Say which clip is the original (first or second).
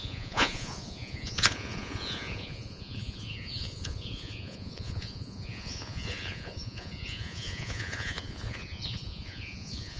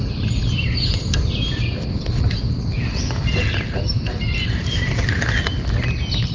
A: second